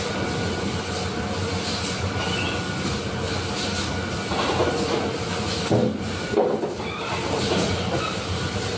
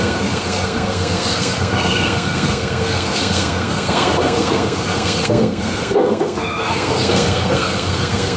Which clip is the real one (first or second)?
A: first